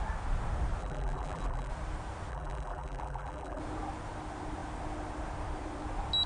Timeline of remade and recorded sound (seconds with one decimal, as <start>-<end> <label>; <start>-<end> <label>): 0.0-0.8 recorded; 0.8-1.7 remade; 1.7-2.3 recorded; 2.3-3.6 remade; 3.6-6.3 recorded